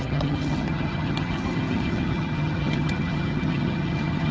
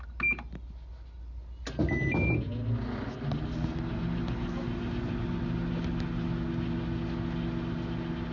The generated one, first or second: first